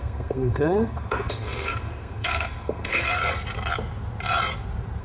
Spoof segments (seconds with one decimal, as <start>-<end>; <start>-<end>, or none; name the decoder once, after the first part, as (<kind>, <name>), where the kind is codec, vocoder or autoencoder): 0.0-3.1 (codec, SNAC)

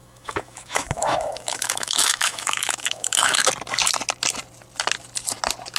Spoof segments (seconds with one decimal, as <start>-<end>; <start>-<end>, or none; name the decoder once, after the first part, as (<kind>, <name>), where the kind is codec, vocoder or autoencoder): 0.0-3.5 (autoencoder, DAC-VAE)

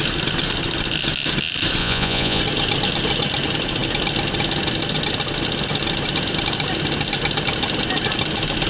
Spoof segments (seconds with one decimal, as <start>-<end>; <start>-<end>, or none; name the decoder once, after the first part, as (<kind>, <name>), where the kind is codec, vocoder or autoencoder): 1.8-2.4 (vocoder, Vocos)